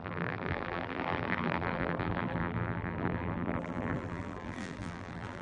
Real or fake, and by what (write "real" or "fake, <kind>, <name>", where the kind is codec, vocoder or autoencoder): fake, vocoder, BigVGAN v2